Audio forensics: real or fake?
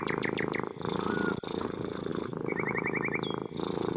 real